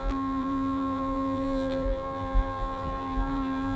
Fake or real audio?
fake